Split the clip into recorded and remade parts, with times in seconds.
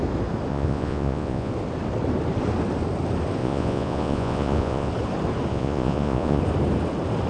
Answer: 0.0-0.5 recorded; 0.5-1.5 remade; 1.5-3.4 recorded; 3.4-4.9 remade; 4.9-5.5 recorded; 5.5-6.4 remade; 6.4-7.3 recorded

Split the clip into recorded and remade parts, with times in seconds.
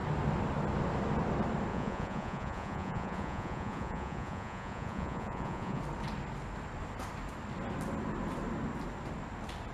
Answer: 0.0-1.7 recorded; 1.7-5.8 remade; 5.8-9.7 recorded